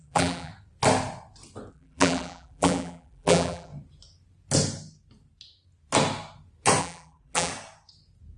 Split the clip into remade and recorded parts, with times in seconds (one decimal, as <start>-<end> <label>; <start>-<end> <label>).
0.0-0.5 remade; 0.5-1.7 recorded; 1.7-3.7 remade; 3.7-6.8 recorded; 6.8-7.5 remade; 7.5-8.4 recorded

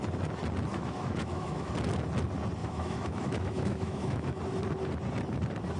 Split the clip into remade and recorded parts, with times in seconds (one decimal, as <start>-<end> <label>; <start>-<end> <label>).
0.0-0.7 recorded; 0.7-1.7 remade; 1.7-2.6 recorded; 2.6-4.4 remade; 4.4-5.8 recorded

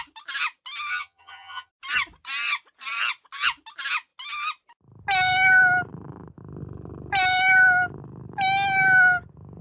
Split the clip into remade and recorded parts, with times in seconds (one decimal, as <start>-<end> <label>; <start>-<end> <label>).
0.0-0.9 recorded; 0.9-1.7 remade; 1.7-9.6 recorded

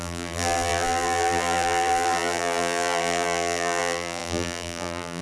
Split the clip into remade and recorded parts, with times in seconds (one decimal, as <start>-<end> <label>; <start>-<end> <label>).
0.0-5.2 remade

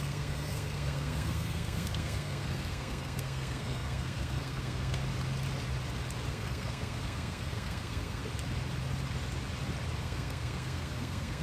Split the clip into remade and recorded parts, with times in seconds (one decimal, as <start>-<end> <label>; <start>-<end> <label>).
0.0-5.0 remade; 5.0-6.3 recorded; 6.3-8.2 remade; 8.2-10.0 recorded; 10.0-11.4 remade